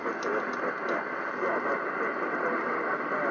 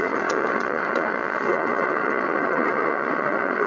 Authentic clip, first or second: first